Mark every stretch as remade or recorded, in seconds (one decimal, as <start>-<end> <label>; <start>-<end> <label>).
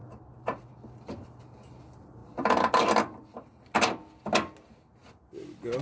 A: 0.0-5.8 recorded